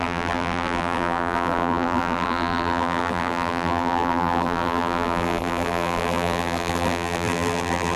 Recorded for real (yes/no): no